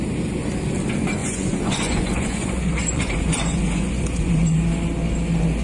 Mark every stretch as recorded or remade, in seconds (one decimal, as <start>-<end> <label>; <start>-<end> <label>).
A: 0.0-1.2 recorded; 1.2-4.6 remade; 4.6-5.6 recorded